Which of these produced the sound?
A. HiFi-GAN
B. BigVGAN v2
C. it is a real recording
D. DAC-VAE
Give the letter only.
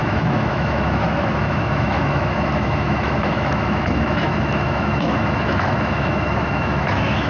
D